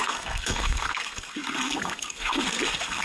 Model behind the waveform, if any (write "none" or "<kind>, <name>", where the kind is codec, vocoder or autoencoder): codec, SNAC